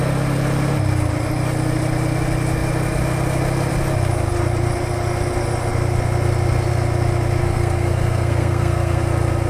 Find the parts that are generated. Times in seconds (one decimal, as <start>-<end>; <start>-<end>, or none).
7.4-9.0